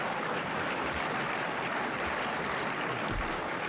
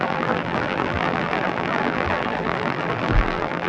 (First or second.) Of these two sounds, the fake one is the second